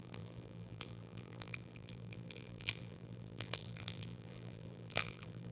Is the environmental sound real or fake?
fake